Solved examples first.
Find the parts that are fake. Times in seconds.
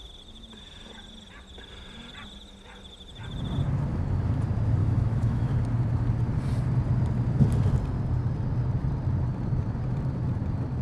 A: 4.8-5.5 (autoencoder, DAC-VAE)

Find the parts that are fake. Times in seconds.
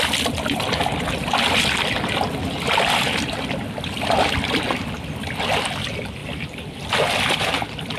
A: 6.2-7.5 (vocoder, BigVGAN v2)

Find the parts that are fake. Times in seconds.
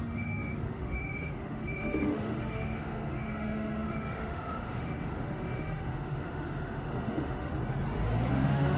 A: 0.0-7.5 (autoencoder, DAC-VAE); 8.3-8.8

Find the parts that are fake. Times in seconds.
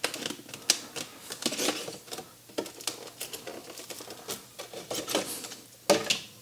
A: none